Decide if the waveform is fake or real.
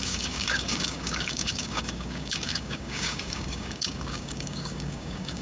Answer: fake